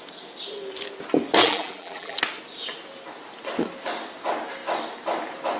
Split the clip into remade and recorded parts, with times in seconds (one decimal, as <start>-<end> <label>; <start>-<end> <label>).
0.0-1.4 recorded; 1.4-2.2 remade; 2.2-5.6 recorded